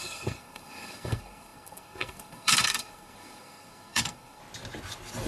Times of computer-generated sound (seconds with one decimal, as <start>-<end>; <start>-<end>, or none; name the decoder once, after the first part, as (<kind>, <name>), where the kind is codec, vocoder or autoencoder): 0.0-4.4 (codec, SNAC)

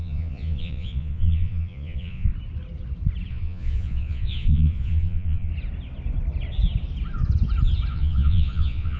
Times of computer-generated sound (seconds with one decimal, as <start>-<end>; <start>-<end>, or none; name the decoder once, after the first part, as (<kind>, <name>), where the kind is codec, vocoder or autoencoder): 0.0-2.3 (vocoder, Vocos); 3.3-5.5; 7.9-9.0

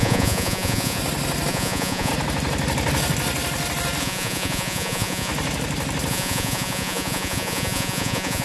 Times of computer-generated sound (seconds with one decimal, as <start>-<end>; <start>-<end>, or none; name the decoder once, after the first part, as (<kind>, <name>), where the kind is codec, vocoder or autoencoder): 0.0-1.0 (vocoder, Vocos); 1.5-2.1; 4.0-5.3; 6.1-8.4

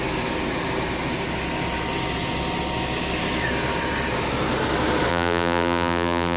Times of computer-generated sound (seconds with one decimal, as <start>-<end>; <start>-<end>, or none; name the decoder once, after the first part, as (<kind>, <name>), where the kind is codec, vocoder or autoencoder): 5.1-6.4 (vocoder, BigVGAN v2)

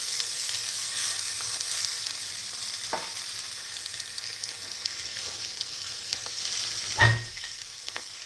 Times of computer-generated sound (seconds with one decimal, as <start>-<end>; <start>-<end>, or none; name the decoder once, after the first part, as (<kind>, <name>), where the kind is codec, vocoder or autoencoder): 0.0-2.2 (codec, SNAC); 3.6-6.4; 7.0-8.3